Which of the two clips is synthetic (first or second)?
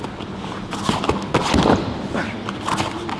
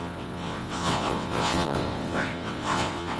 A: second